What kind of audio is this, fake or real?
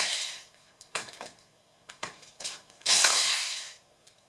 fake